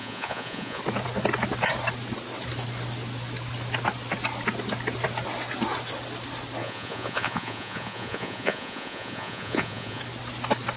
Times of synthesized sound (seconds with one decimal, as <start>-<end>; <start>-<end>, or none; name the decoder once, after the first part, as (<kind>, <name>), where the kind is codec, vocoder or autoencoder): 0.0-0.8 (vocoder, Vocos); 6.6-10.0